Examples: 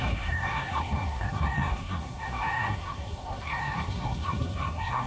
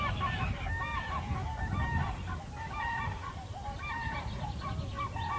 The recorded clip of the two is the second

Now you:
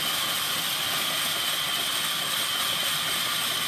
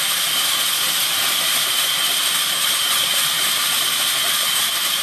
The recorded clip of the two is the first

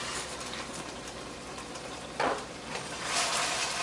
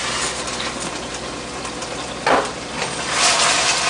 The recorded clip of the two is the second